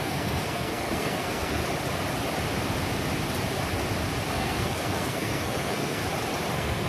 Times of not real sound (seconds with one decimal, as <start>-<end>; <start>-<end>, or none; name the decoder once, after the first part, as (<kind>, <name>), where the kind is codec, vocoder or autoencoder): 0.0-1.6 (codec, SNAC); 4.3-6.0; 6.5-6.9